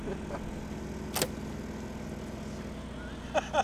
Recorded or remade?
recorded